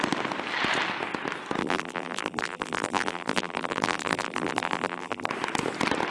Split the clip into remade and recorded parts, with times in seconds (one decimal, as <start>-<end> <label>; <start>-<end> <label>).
0.0-1.6 recorded; 1.6-5.3 remade; 5.3-6.1 recorded